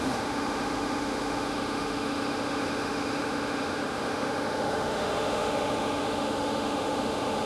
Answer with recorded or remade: remade